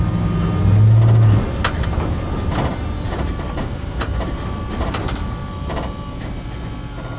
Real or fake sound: real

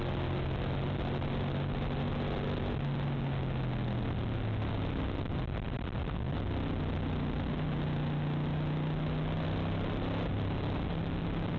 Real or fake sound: real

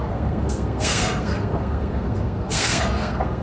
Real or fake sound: fake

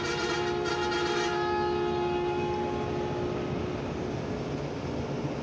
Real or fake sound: real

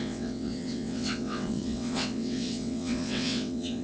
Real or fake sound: fake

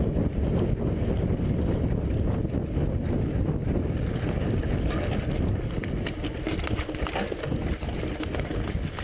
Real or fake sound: real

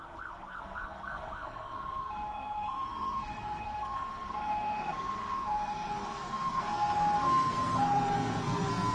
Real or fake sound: fake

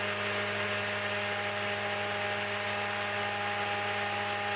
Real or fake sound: real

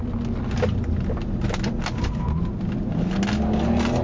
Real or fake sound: real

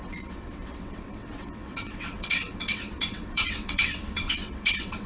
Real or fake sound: fake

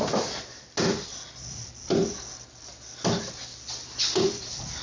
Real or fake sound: real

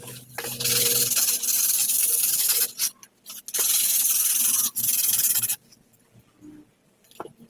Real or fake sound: real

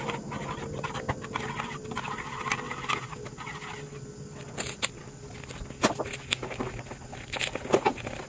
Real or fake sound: real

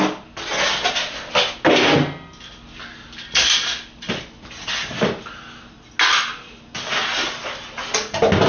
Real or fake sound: real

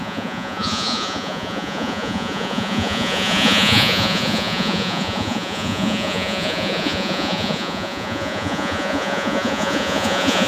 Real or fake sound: fake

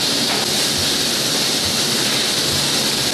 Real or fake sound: real